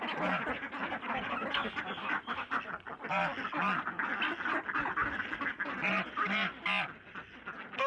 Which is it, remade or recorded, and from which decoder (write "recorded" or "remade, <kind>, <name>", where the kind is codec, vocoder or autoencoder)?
recorded